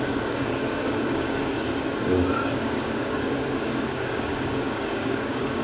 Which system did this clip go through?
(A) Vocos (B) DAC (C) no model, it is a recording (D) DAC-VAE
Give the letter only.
B